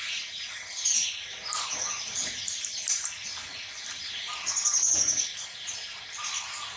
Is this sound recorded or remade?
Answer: recorded